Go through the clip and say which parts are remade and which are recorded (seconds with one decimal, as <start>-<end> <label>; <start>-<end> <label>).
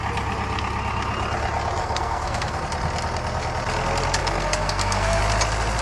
0.0-1.8 recorded; 1.8-2.6 remade; 2.6-4.2 recorded; 4.2-5.2 remade; 5.2-5.8 recorded